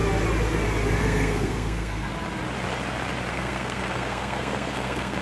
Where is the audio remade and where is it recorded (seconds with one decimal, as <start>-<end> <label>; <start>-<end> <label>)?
0.0-1.0 recorded; 1.0-2.1 remade; 2.1-3.3 recorded; 3.3-5.2 remade